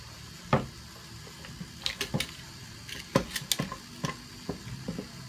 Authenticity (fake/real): real